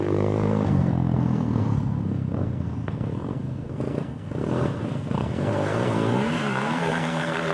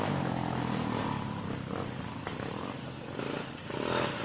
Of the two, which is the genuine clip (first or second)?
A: second